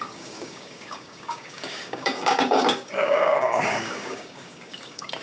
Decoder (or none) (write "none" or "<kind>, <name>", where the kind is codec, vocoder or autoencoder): codec, DAC